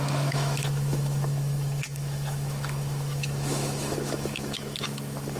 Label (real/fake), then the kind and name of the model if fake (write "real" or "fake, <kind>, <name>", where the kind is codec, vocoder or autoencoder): fake, autoencoder, DAC-VAE